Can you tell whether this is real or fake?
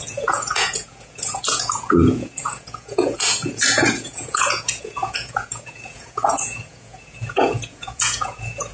fake